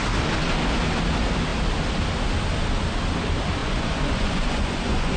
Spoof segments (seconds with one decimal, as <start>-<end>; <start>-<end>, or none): 3.6-5.2